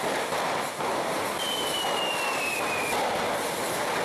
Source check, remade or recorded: recorded